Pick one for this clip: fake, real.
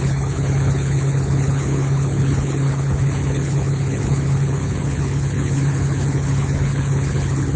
fake